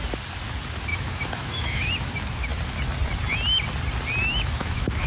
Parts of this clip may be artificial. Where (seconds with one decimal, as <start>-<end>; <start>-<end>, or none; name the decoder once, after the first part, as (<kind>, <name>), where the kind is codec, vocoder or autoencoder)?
0.9-1.9 (autoencoder, DAC-VAE); 4.2-5.1